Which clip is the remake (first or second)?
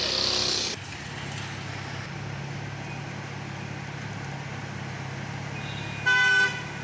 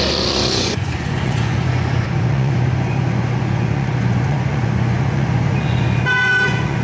second